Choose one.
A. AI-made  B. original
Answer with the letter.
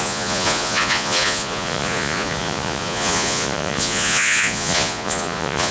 A